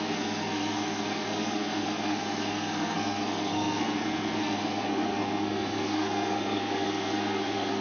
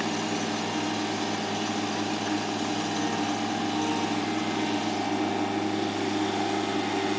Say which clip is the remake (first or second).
first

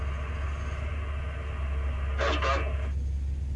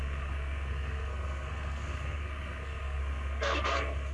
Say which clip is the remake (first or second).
second